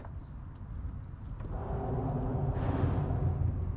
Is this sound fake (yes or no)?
no